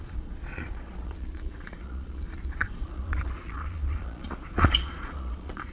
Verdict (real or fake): fake